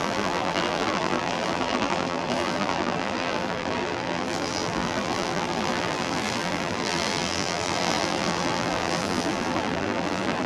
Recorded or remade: remade